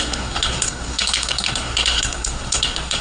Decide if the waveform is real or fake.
fake